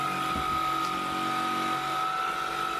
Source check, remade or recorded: recorded